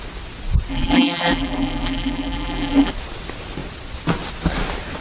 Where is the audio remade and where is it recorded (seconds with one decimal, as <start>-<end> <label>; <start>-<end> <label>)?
0.0-0.7 recorded; 0.7-2.9 remade; 2.9-5.0 recorded